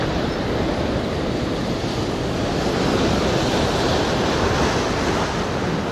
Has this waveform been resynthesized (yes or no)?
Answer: no